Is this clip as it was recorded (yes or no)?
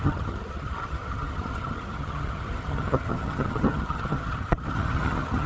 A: no